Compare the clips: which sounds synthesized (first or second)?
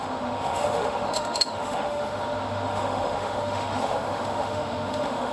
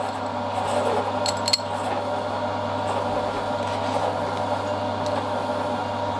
first